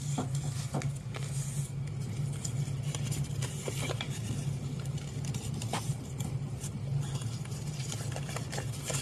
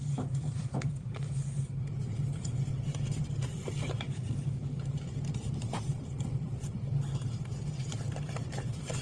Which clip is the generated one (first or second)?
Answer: second